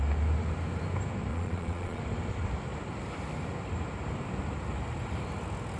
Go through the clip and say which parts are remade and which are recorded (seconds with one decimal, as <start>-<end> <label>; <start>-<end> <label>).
0.0-1.3 recorded; 1.3-2.0 remade; 2.0-5.8 recorded